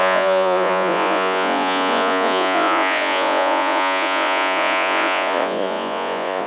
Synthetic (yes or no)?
yes